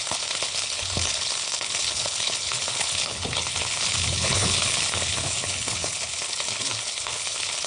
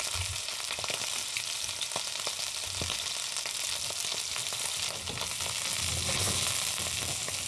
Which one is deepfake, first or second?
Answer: first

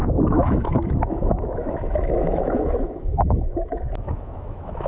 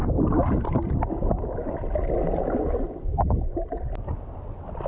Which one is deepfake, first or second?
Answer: first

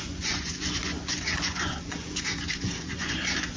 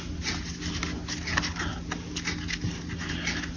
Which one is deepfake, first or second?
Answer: first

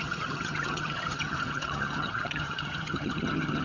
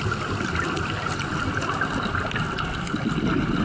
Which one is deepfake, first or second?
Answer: first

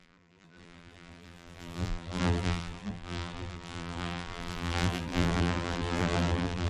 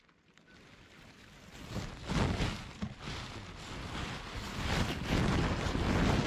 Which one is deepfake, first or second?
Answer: first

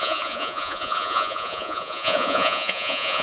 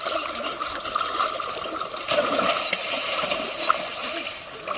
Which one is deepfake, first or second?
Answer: first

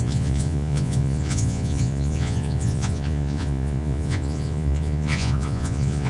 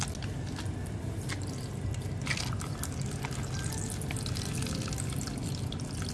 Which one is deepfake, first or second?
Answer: first